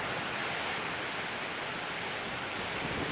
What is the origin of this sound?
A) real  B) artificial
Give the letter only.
A